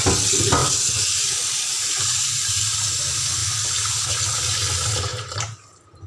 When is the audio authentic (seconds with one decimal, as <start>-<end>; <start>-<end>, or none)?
0.0-0.6; 2.6-5.1